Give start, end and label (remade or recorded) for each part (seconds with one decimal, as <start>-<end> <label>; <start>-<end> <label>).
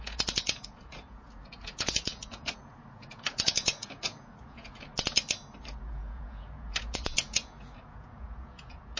0.0-4.9 remade; 4.9-5.7 recorded; 5.7-9.0 remade